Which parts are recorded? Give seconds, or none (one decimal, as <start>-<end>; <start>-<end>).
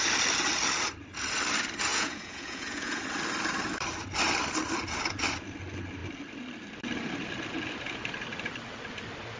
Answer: 0.0-1.9; 3.0-9.4